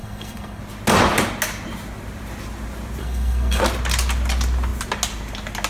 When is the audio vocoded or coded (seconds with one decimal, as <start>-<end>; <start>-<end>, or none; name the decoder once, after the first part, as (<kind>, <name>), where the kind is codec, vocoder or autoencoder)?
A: 0.0-0.6 (codec, SNAC); 3.0-3.6